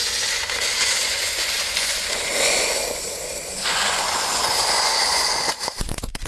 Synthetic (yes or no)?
yes